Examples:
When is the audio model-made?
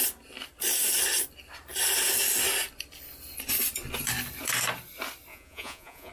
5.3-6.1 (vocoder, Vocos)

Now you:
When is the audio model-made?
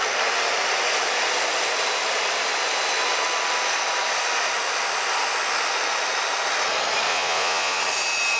7.1-7.8 (vocoder, Vocos)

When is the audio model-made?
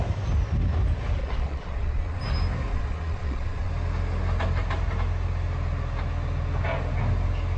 1.2-2.2 (vocoder, Vocos); 2.7-3.7